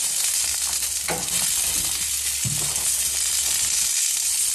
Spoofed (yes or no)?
no